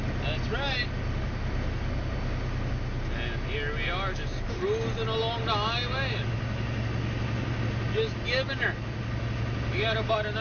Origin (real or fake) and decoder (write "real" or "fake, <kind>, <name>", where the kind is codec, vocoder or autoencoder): real